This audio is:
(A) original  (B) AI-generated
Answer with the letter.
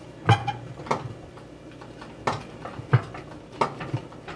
A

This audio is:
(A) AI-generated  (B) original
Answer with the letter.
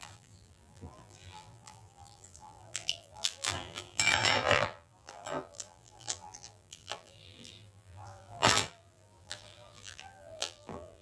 A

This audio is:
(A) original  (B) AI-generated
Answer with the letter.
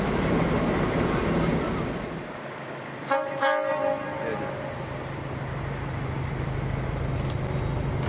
A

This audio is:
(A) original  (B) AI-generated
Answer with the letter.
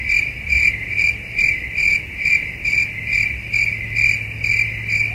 A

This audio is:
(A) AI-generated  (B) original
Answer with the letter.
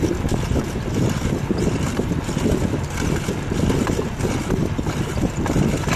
B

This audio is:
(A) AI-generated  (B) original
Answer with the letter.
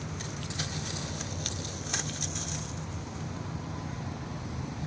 B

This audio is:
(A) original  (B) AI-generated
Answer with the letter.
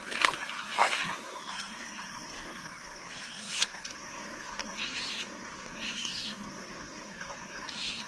B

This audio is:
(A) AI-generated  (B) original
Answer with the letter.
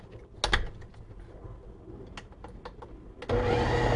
B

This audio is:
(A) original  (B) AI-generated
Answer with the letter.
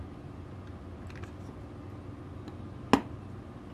A